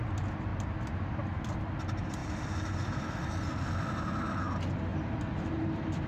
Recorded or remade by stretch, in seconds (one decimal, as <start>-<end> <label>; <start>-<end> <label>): 0.0-2.2 recorded; 2.2-3.3 remade; 3.3-4.9 recorded; 4.9-6.1 remade